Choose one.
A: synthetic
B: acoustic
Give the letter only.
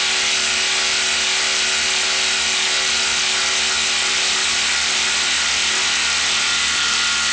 A